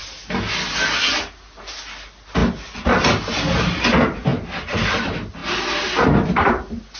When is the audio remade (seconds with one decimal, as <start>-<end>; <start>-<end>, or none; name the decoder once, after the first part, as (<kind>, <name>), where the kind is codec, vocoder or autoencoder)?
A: none